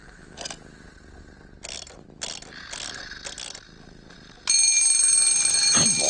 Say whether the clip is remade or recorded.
recorded